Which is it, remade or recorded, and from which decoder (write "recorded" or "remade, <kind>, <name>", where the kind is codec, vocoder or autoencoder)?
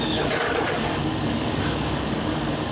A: remade, codec, DAC